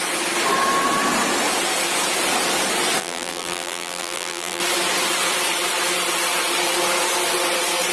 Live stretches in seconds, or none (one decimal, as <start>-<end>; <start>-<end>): 0.0-3.0; 4.6-7.9